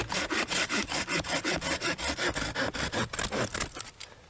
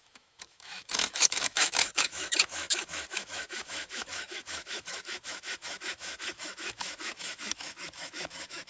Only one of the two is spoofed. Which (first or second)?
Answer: second